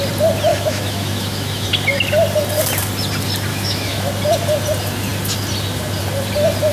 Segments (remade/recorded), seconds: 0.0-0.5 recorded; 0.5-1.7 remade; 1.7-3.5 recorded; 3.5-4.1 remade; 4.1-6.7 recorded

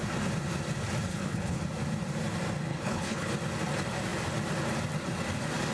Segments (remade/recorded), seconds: 0.0-1.1 recorded; 1.1-1.6 remade; 1.6-2.7 recorded; 2.7-3.3 remade; 3.3-5.7 recorded

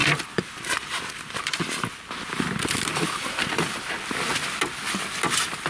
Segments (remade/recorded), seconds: 0.0-2.1 remade; 2.1-2.9 recorded; 2.9-3.7 remade; 3.7-5.7 recorded

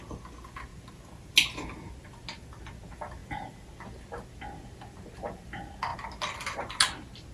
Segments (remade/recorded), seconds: 0.0-7.3 recorded

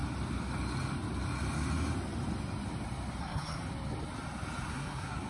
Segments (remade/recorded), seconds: 0.0-3.2 recorded; 3.2-3.6 remade; 3.6-4.7 recorded; 4.7-5.3 remade

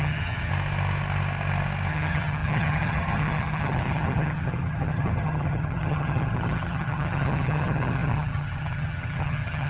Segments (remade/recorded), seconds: 0.0-0.5 remade; 0.5-1.9 recorded; 1.9-9.7 remade

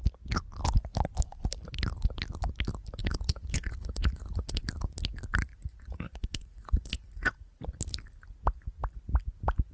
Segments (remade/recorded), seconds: 0.0-3.0 recorded; 3.0-4.6 remade; 4.6-5.7 recorded; 5.7-7.6 remade; 7.6-9.7 recorded